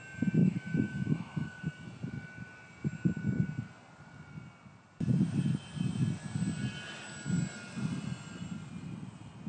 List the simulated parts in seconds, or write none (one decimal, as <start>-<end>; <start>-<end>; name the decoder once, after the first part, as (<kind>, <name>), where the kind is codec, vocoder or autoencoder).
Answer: 0.4-1.6 (autoencoder, DAC-VAE)